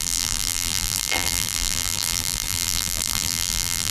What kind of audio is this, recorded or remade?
remade